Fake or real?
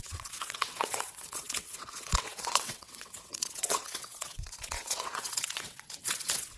fake